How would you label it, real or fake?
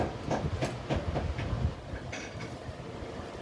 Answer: real